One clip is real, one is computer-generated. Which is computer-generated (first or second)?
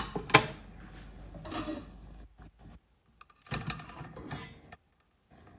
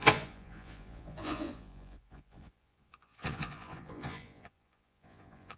second